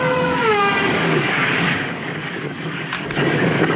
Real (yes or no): no